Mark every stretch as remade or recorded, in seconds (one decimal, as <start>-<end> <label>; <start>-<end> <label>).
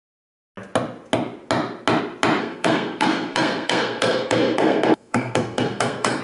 0.0-2.4 recorded; 2.4-6.2 remade